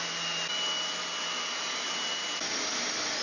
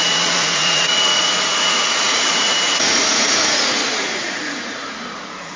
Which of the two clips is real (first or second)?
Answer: first